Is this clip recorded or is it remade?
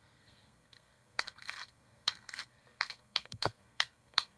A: remade